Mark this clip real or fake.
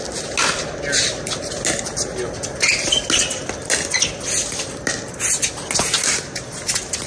real